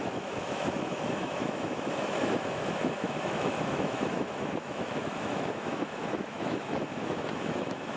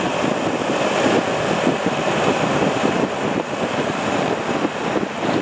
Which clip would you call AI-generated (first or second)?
first